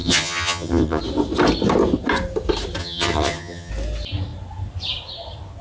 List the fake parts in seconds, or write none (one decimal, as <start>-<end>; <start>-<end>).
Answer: 0.0-1.0; 2.8-3.7